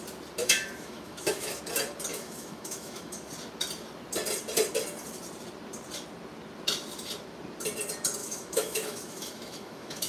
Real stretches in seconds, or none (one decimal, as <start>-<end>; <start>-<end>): 0.0-0.4; 1.6-2.1; 3.3-8.2

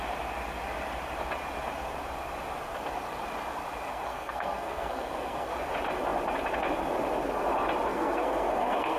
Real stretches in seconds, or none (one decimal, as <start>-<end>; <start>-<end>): 0.0-3.9; 5.5-7.9

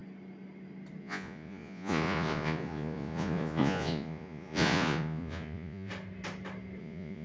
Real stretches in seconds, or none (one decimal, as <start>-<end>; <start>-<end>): 0.0-1.0; 5.9-6.8